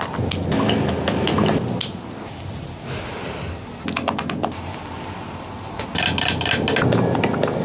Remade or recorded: recorded